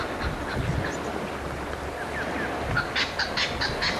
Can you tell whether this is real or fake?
real